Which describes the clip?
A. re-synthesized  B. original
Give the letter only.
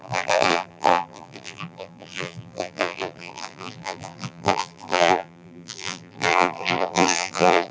A